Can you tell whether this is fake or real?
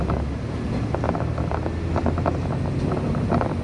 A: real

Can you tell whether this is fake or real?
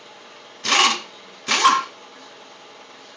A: real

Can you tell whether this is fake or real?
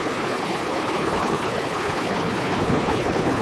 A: fake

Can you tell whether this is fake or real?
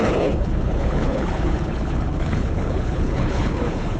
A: fake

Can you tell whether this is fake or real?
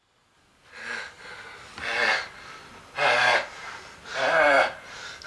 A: real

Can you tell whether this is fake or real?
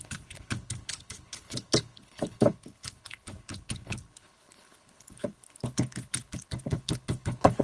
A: fake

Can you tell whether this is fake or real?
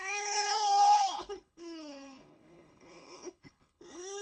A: fake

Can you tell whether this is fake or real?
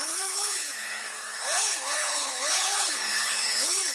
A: fake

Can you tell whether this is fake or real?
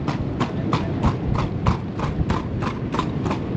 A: real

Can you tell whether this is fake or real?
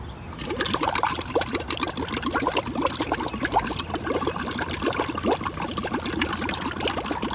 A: real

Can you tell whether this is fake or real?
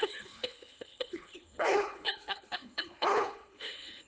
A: fake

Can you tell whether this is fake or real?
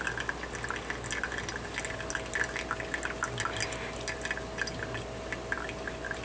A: real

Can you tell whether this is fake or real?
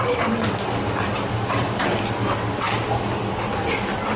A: real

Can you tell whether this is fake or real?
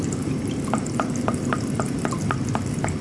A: real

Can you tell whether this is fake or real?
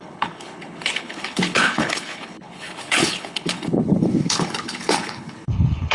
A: fake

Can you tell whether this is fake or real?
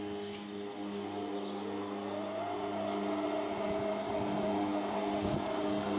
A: real